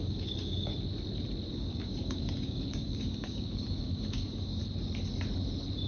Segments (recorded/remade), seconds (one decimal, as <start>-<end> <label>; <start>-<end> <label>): 0.0-0.7 remade; 0.7-1.5 recorded; 1.5-4.6 remade; 4.6-5.9 recorded